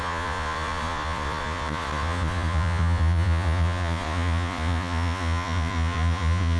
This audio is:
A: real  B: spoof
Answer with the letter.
B